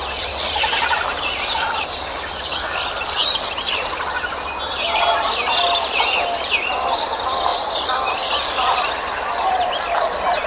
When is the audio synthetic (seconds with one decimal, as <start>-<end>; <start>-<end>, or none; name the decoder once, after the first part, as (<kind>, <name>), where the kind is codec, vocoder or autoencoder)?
none